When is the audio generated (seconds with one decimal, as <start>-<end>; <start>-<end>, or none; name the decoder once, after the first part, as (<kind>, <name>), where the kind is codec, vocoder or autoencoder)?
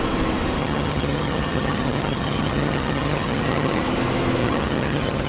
0.6-3.8 (vocoder, HiFi-GAN); 4.4-5.3